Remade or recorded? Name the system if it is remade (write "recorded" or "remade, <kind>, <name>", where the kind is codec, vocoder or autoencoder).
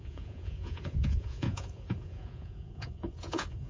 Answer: remade, vocoder, Vocos